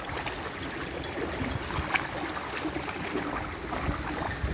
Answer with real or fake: real